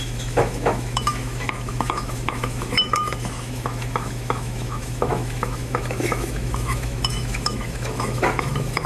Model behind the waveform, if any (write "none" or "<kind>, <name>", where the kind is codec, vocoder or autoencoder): autoencoder, DAC-VAE